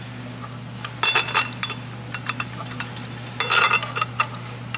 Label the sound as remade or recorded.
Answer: recorded